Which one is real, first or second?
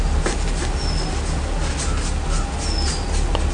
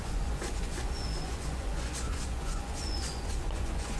first